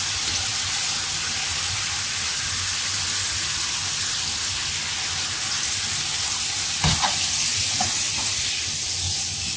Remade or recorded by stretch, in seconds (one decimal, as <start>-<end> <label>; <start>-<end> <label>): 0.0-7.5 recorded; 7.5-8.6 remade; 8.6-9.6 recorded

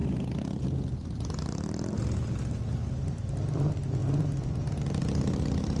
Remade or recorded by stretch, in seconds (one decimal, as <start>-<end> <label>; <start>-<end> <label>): 0.0-5.8 recorded

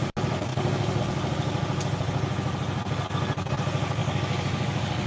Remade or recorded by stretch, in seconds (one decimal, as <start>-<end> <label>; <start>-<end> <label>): 0.0-0.5 recorded; 0.5-1.0 remade; 1.0-4.0 recorded; 4.0-5.1 remade

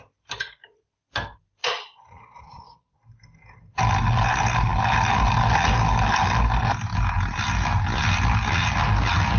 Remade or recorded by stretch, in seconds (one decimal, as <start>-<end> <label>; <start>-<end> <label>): 0.0-1.6 recorded; 1.6-3.0 remade; 3.0-9.4 recorded

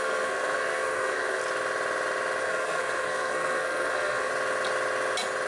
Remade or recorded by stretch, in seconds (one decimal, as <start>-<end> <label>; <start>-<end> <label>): 0.0-1.4 remade; 1.4-2.4 recorded; 2.4-4.3 remade; 4.3-5.5 recorded

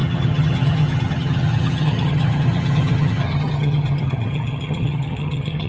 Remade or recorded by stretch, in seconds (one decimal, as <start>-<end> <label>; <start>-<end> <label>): 0.0-5.7 remade

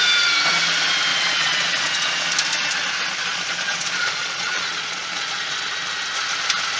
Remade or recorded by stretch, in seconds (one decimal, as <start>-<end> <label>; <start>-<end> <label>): 0.0-1.1 recorded; 1.1-2.3 remade; 2.3-3.3 recorded; 3.3-5.7 remade; 5.7-6.8 recorded

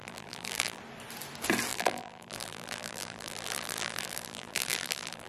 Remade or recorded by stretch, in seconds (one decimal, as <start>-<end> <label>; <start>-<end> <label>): 0.0-0.8 remade; 0.8-1.7 recorded; 1.7-5.3 remade